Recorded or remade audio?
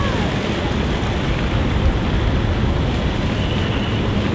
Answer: recorded